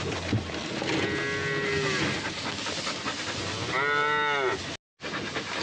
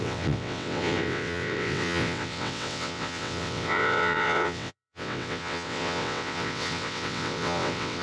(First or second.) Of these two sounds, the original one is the first